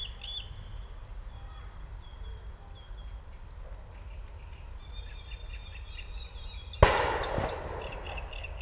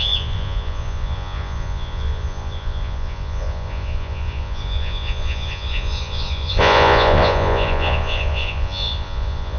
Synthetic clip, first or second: second